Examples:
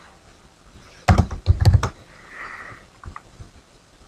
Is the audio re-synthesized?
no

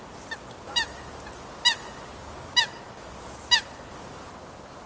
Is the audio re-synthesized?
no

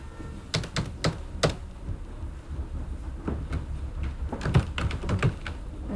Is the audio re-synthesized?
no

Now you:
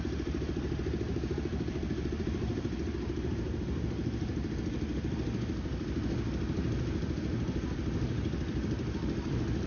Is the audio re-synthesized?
no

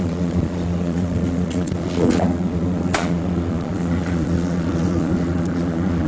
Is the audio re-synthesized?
yes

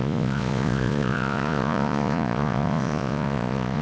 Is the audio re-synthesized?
yes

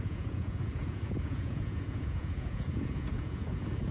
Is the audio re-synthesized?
yes